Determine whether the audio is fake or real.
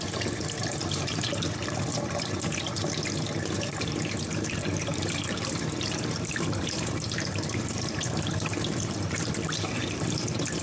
fake